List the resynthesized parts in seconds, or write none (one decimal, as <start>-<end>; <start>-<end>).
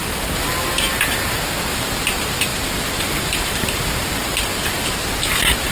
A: 2.5-4.1; 4.5-5.1